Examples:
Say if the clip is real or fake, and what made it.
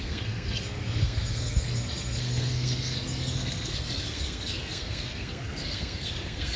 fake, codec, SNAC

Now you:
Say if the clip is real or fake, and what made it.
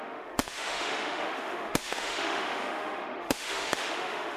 fake, autoencoder, DAC-VAE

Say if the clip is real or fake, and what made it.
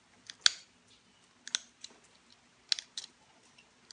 real